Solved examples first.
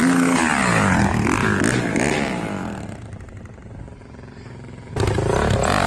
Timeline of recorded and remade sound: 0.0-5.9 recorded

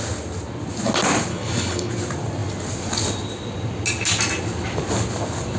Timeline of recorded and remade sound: 0.0-1.3 recorded; 1.3-1.9 remade; 1.9-5.6 recorded

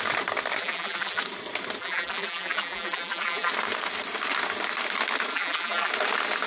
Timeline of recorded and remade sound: 0.0-0.6 recorded; 0.6-1.2 remade; 1.2-1.8 recorded; 1.8-3.5 remade; 3.5-5.3 recorded; 5.3-5.9 remade; 5.9-6.5 recorded

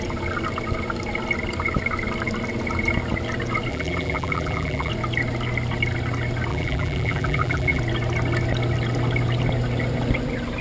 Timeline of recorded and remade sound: 0.0-3.7 recorded; 3.7-4.9 remade; 4.9-6.5 recorded; 6.5-7.8 remade; 7.8-10.6 recorded

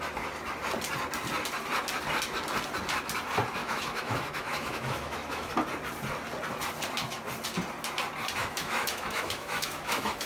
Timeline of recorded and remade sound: 0.0-3.6 recorded; 3.6-5.5 remade; 5.5-8.4 recorded; 8.4-10.3 remade

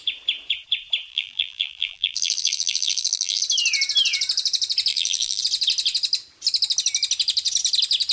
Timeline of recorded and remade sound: 0.0-1.1 recorded; 1.1-3.4 remade; 3.4-4.9 recorded; 4.9-5.4 remade; 5.4-8.1 recorded